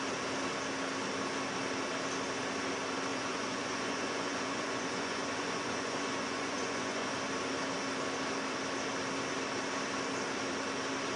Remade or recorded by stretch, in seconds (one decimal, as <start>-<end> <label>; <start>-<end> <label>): 0.0-3.1 recorded; 3.1-7.1 remade; 7.1-11.2 recorded